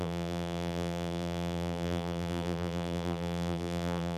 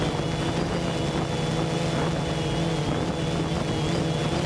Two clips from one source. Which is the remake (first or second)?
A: first